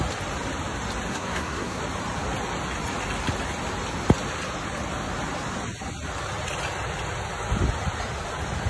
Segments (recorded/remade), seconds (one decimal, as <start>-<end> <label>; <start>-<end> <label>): 0.0-1.1 recorded; 1.1-1.8 remade; 1.8-8.7 recorded